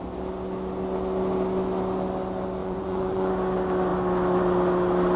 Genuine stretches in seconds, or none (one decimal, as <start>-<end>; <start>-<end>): 0.0-2.6; 3.3-5.2